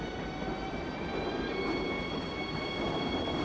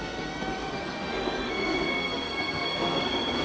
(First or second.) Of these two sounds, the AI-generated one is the second